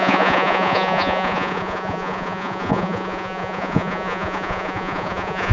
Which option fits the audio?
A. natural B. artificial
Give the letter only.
B